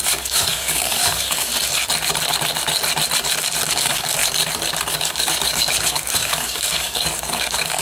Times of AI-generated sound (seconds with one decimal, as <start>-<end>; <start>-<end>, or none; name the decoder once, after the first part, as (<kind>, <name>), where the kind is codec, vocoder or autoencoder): 0.0-1.5 (codec, DAC); 3.7-4.2; 4.9-7.8